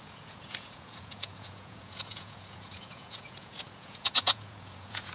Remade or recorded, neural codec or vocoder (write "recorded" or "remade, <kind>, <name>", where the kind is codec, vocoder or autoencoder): remade, vocoder, Vocos